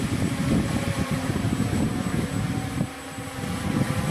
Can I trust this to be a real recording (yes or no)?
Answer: yes